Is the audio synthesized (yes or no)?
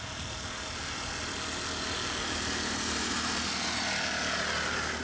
no